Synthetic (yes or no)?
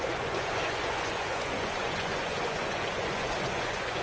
yes